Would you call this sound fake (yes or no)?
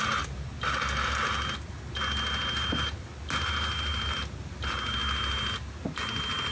no